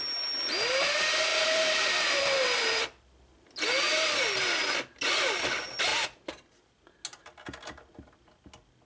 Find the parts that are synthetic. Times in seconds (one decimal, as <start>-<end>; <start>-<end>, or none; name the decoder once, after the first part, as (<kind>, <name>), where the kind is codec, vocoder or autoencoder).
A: 1.3-2.8 (vocoder, BigVGAN v2)